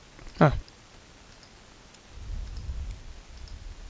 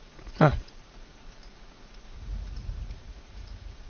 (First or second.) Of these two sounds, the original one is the first